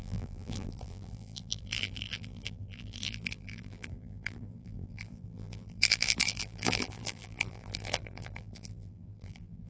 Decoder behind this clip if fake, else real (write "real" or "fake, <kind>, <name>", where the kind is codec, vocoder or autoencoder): fake, vocoder, BigVGAN v2